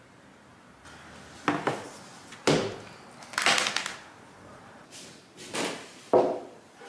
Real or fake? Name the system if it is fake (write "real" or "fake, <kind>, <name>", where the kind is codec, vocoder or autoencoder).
real